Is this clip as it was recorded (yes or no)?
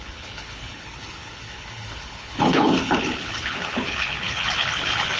no